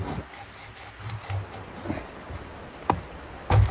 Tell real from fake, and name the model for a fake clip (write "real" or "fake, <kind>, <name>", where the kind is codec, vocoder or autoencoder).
real